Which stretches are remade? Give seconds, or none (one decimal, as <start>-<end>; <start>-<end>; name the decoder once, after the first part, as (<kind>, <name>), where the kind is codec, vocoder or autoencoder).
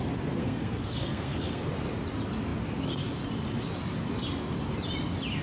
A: 0.4-1.6 (codec, SNAC)